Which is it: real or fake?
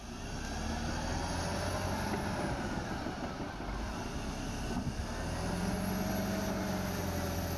real